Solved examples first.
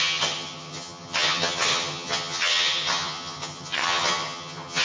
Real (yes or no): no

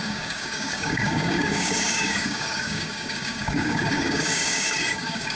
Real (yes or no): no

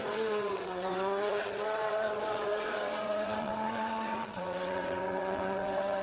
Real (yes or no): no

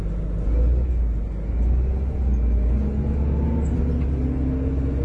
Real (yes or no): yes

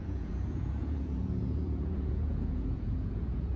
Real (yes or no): no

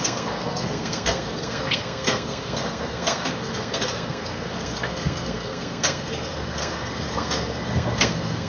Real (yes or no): no